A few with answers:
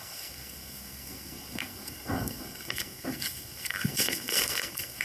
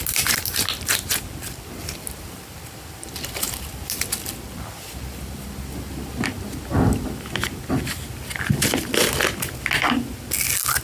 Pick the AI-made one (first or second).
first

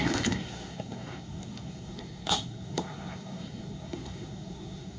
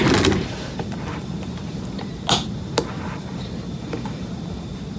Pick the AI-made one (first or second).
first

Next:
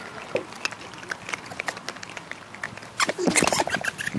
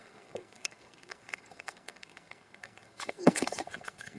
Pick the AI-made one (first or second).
second